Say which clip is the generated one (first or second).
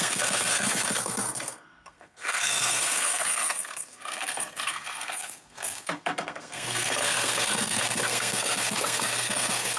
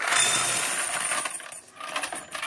first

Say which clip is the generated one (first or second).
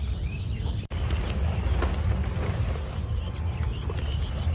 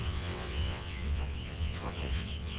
second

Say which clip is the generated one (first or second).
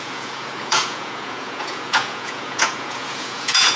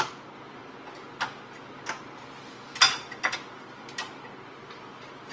first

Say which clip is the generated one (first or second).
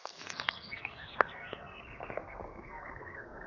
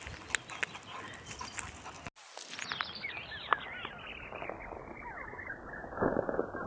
first